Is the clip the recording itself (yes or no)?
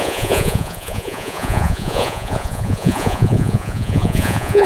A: no